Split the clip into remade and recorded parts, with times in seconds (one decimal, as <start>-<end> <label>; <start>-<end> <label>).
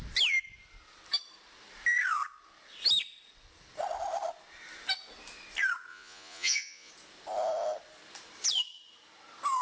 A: 0.0-5.9 recorded; 5.9-6.9 remade; 6.9-9.6 recorded